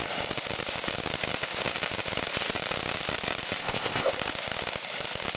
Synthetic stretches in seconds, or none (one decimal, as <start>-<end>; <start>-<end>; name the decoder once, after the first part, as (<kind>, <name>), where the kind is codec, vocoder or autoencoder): 3.6-4.1 (codec, ZipCodec)